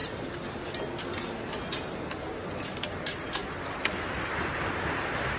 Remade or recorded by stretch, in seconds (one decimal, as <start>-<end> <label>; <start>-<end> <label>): 0.0-5.4 recorded